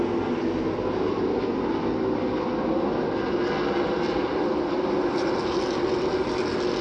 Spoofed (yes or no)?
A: no